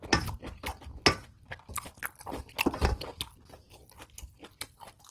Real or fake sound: real